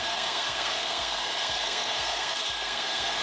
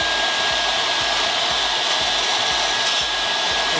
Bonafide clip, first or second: second